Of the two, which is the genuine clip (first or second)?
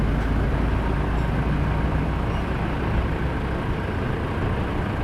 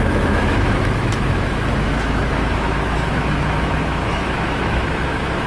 first